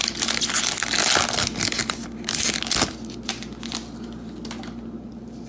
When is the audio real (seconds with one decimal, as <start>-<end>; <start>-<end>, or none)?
0.0-5.5